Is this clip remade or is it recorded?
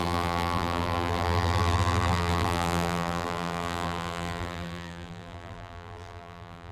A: remade